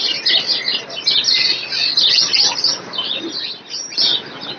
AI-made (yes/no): no